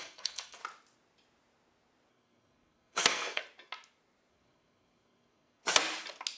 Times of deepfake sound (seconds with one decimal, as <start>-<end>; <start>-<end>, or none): 0.0-0.6; 2.1-3.4; 4.3-5.6